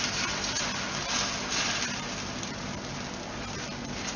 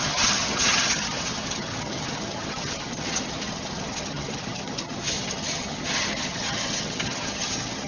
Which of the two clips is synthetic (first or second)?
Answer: second